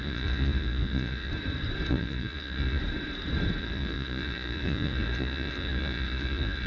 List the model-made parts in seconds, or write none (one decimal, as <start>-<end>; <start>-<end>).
0.0-1.3; 1.9-2.8; 3.6-6.7